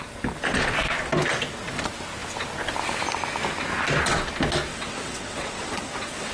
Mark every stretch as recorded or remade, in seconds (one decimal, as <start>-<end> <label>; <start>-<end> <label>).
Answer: 0.0-4.7 recorded; 4.7-6.3 remade